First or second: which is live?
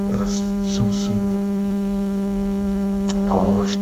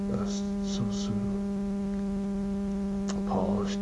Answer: second